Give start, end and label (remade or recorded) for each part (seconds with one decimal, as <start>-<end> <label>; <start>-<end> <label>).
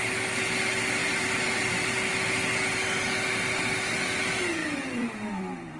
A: 0.0-1.0 recorded; 1.0-2.1 remade; 2.1-4.6 recorded; 4.6-5.8 remade